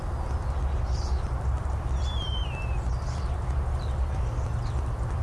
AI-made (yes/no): no